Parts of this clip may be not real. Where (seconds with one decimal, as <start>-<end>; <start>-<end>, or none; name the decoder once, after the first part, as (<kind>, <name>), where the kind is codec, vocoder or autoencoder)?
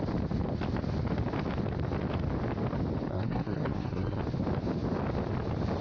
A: 3.1-4.2 (codec, SNAC)